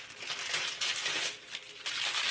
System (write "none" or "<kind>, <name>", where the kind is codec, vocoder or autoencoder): vocoder, BigVGAN v2